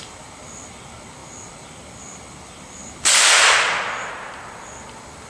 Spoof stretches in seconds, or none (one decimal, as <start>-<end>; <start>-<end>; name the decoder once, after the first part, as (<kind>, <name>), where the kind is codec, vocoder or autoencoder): 0.0-5.3 (vocoder, BigVGAN v2)